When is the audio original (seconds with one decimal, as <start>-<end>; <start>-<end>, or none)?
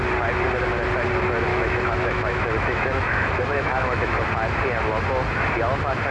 0.0-1.5; 4.2-6.1